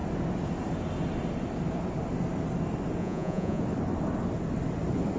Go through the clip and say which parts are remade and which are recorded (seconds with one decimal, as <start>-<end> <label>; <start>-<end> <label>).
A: 0.0-3.0 recorded; 3.0-3.6 remade; 3.6-5.2 recorded